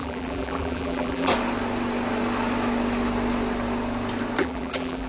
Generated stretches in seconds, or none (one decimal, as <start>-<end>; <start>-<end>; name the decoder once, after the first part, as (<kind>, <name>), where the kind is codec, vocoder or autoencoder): 0.0-1.3 (vocoder, BigVGAN v2); 4.4-5.1